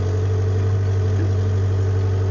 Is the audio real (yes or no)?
yes